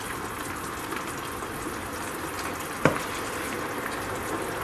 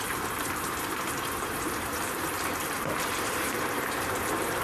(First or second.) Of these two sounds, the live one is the first